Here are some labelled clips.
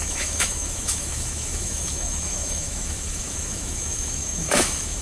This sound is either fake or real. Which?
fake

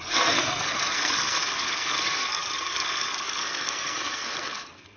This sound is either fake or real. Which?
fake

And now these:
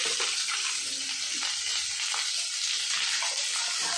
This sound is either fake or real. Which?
real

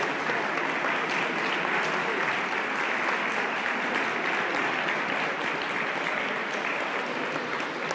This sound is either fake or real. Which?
real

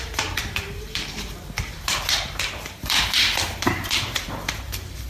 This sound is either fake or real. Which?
fake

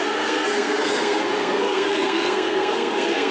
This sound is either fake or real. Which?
fake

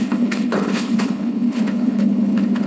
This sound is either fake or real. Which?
fake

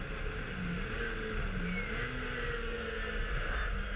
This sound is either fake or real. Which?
real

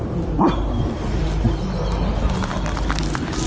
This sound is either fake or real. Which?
real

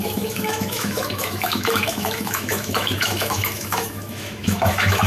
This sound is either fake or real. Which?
fake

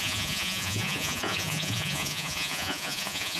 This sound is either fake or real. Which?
fake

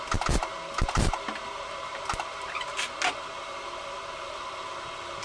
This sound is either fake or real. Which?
real